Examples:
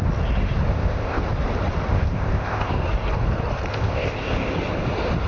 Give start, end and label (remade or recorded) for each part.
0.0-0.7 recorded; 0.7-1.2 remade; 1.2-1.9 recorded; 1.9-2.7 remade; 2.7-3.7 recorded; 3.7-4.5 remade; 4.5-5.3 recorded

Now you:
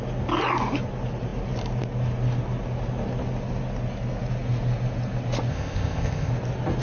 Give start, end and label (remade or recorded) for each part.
0.0-5.5 recorded; 5.5-6.3 remade; 6.3-6.8 recorded

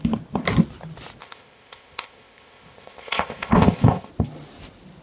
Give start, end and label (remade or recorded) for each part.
0.0-1.2 recorded; 1.2-4.1 remade; 4.1-5.0 recorded

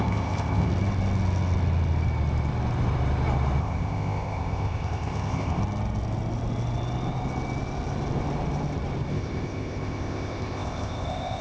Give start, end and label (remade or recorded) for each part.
0.0-0.7 remade; 0.7-3.6 recorded; 3.6-5.6 remade; 5.6-9.1 recorded; 9.1-11.4 remade